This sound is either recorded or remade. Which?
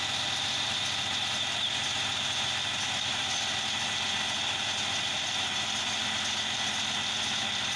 recorded